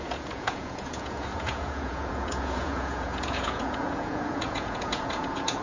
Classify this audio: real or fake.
fake